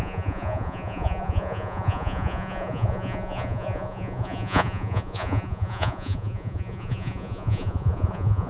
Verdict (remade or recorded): remade